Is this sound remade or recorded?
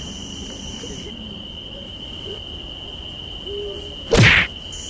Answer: recorded